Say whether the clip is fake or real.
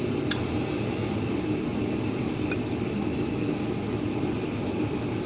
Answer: real